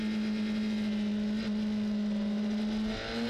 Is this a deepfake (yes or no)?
no